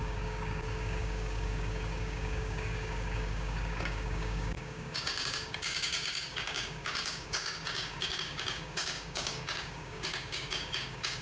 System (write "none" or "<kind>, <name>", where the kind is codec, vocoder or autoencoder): codec, DAC